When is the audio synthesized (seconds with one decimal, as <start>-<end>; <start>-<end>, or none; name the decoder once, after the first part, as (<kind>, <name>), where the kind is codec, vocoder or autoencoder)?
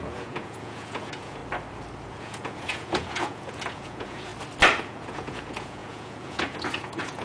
0.0-1.4 (vocoder, Vocos); 2.2-4.3; 4.8-7.2